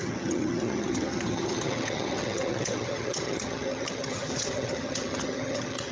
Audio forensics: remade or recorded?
remade